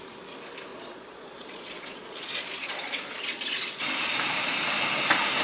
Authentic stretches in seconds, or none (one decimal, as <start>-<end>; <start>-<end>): 0.0-0.7; 3.9-5.4

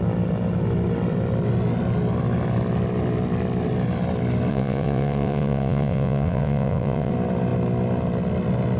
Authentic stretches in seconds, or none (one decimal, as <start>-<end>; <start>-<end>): 0.0-4.5; 7.1-8.8

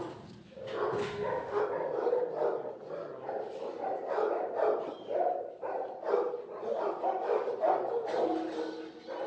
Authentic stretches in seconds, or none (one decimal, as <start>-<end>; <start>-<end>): 0.0-1.0; 1.6-9.3

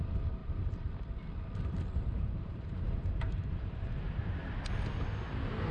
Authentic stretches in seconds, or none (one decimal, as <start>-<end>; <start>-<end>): 0.0-0.4; 0.9-2.0; 4.5-5.7

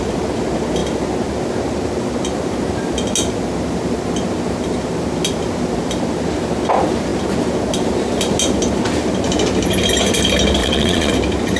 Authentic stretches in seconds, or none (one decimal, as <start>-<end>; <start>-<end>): 0.0-10.6; 11.1-11.6